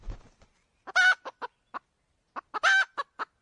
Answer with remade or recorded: recorded